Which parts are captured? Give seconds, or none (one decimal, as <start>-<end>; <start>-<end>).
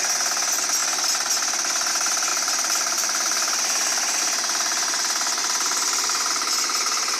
0.0-2.3; 4.2-5.4; 6.3-7.2